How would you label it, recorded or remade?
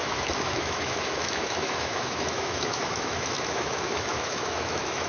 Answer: remade